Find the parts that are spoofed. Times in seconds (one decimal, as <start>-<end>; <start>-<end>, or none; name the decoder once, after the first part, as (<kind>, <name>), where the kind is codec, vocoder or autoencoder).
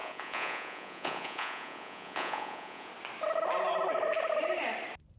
0.0-2.9 (vocoder, Vocos)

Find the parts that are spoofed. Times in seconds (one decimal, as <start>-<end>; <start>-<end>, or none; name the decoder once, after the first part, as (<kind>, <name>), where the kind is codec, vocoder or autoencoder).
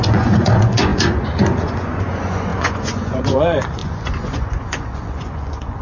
0.0-5.8 (vocoder, Vocos)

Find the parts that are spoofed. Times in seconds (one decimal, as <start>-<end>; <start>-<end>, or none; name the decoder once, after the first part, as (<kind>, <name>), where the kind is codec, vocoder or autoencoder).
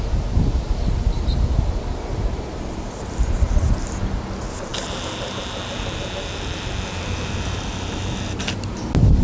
none